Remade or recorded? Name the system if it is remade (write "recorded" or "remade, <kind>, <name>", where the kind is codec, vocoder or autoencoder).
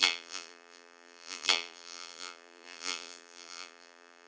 remade, vocoder, BigVGAN v2